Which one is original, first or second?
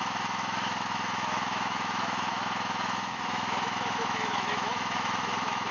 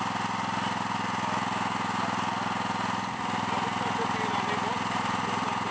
second